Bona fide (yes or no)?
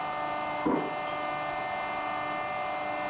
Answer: yes